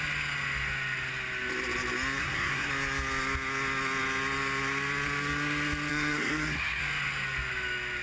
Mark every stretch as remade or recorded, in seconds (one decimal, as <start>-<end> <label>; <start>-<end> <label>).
0.0-2.2 recorded; 2.2-2.7 remade; 2.7-5.9 recorded; 5.9-6.8 remade; 6.8-8.0 recorded